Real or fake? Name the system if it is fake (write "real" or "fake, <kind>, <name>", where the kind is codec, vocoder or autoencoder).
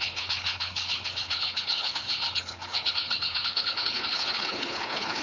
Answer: fake, codec, HILCodec